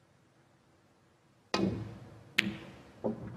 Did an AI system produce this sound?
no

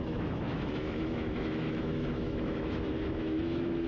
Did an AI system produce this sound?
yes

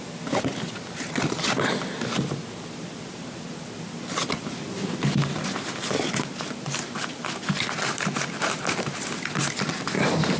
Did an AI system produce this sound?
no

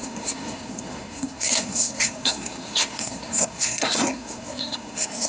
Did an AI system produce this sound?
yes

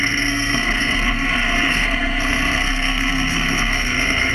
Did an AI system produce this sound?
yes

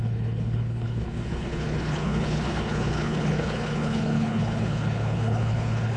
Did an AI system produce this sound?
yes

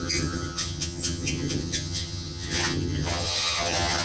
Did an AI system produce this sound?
yes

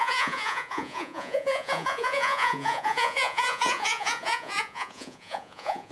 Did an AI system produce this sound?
yes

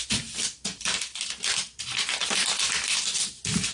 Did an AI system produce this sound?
no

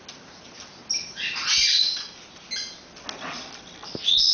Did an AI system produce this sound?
no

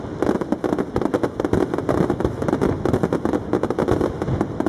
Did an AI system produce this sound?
no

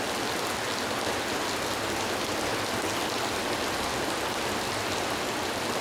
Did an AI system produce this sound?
no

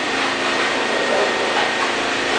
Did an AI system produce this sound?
no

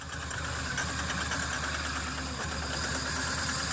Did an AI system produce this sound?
no